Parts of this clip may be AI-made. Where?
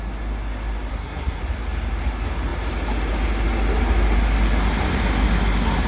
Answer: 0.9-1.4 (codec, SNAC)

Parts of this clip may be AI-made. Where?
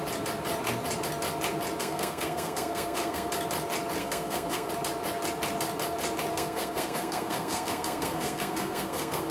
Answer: 1.8-3.3 (codec, SNAC); 4.0-4.7; 6.3-9.3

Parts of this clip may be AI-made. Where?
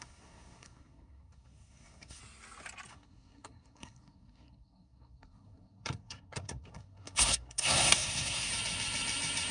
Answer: 0.0-2.2 (codec, SNAC); 2.9-8.5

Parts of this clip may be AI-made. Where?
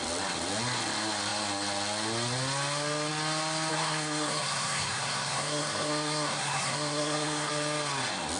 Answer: 3.7-7.5 (codec, SNAC)